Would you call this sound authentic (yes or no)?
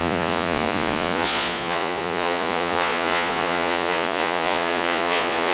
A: no